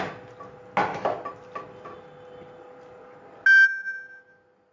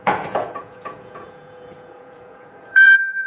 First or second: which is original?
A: first